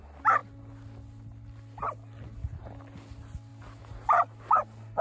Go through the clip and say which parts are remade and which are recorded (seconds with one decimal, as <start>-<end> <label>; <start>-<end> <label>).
0.0-5.0 recorded